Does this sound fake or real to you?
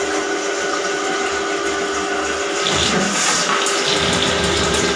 real